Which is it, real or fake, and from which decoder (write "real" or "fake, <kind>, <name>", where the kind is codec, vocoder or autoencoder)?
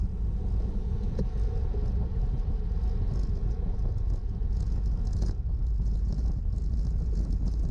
fake, vocoder, Vocos